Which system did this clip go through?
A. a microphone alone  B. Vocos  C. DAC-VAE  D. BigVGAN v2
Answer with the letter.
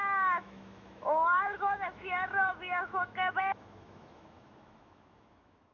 C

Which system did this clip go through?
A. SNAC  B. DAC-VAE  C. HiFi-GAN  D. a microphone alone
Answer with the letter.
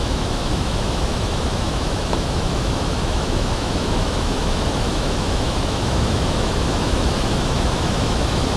B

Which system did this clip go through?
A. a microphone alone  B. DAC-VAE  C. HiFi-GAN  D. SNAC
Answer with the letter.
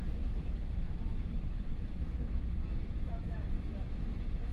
B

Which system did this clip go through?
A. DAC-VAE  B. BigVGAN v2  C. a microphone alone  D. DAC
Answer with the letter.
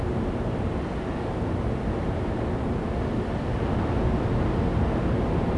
C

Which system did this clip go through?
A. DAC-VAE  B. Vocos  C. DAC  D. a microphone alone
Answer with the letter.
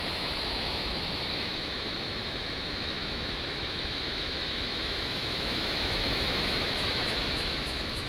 A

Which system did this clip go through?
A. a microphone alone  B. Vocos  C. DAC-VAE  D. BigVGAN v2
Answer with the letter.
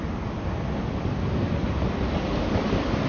A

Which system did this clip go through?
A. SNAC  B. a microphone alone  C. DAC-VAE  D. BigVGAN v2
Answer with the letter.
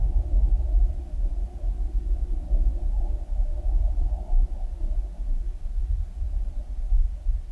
B